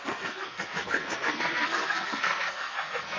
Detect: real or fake fake